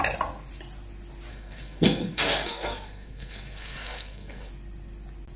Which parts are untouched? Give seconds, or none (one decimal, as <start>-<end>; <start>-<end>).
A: 0.0-1.3; 4.5-5.4